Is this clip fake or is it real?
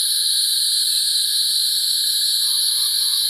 fake